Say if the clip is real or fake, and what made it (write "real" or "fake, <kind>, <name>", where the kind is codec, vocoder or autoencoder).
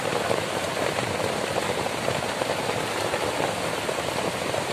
real